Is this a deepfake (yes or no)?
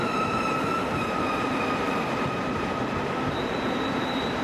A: yes